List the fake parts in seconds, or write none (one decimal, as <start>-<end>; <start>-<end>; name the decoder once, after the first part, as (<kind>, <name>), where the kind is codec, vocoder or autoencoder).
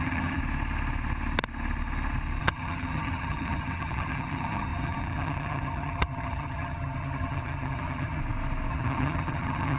0.0-0.4 (vocoder, HiFi-GAN); 2.4-8.2; 8.7-9.8